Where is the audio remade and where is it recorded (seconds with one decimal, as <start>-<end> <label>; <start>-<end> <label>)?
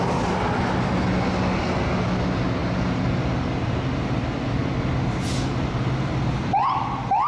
0.0-7.3 recorded